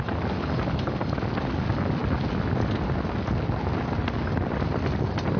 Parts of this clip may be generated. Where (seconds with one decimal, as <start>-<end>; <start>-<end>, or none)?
none